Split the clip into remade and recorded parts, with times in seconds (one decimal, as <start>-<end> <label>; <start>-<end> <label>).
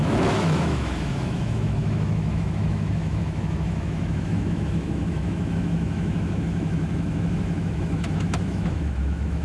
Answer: 0.0-9.4 remade